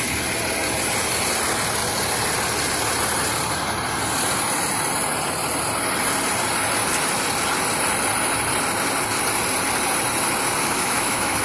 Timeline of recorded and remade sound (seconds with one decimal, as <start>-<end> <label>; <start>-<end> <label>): 0.0-10.6 recorded; 10.6-11.4 remade